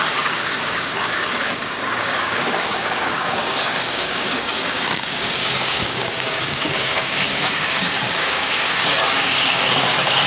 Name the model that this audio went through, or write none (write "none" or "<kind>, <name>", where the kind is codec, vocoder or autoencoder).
codec, DAC